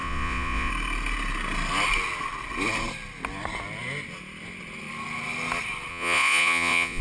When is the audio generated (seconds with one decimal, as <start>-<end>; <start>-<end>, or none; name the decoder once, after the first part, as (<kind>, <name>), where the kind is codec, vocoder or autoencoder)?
0.0-0.7 (vocoder, Vocos); 5.9-7.0